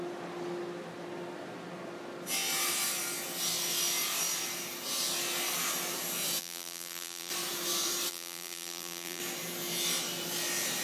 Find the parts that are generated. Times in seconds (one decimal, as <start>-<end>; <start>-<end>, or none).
6.4-7.3; 8.1-9.2